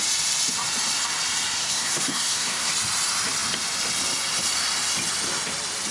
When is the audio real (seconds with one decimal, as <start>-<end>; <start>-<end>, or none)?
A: 0.0-1.6; 2.7-5.9